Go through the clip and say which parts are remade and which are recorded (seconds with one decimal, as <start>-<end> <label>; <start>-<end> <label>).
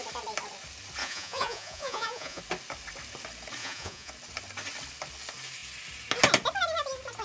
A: 0.0-1.0 recorded; 1.0-2.4 remade; 2.4-3.6 recorded; 3.6-4.1 remade; 4.1-7.2 recorded